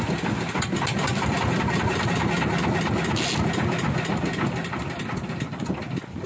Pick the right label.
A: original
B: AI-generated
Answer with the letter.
A